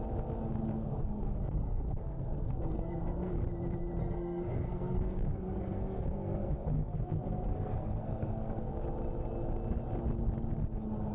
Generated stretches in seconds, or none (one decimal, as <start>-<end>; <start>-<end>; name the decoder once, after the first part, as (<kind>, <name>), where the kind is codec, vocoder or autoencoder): 0.7-3.4 (codec, SNAC); 4.0-8.7